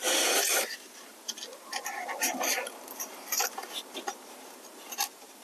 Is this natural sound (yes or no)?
no